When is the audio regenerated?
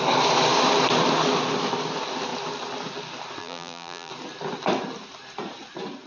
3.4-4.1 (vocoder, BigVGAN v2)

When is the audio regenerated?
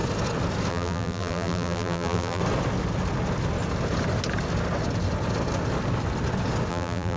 0.7-2.4 (vocoder, BigVGAN v2); 6.7-7.2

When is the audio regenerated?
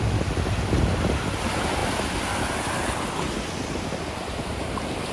1.8-5.1 (vocoder, BigVGAN v2)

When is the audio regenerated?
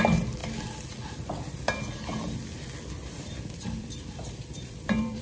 0.0-0.4 (vocoder, BigVGAN v2); 3.5-5.2